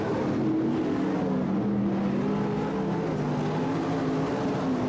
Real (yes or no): yes